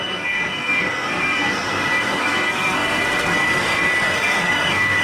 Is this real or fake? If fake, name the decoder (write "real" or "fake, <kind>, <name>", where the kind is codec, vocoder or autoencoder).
fake, codec, SNAC